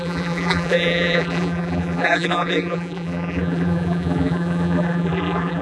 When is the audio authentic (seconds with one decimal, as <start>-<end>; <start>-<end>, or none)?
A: none